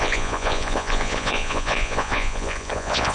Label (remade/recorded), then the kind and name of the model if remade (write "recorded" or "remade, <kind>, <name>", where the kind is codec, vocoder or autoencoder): remade, vocoder, Vocos